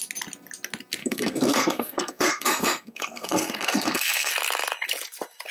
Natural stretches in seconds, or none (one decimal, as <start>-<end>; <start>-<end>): 0.0-1.0; 4.3-5.5